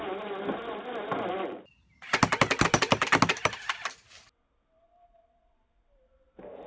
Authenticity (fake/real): real